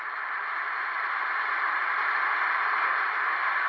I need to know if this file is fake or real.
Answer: fake